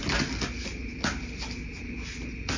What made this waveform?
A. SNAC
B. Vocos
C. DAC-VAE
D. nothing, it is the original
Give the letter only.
D